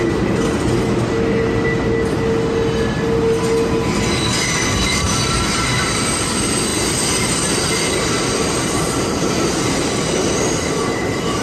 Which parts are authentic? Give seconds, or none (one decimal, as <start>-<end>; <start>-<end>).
0.0-11.4